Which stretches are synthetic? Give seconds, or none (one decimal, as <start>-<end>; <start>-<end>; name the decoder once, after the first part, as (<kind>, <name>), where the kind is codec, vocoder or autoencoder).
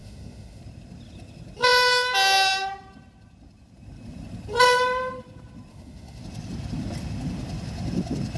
0.0-0.6 (autoencoder, DAC-VAE); 5.7-6.2